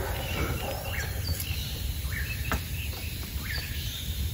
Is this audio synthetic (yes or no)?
no